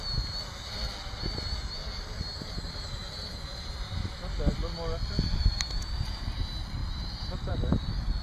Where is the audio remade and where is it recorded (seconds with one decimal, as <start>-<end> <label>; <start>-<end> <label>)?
0.0-8.2 recorded